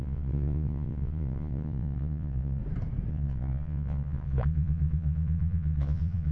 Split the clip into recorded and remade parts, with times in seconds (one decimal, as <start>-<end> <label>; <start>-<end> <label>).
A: 0.0-2.6 remade; 2.6-3.1 recorded; 3.1-6.3 remade